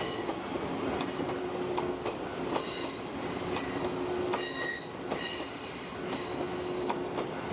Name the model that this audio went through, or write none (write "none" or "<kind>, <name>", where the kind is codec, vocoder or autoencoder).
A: none